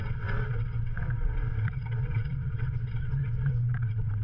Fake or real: fake